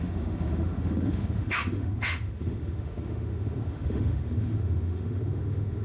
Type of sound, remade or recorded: remade